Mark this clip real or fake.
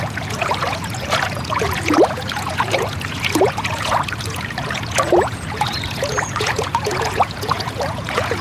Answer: fake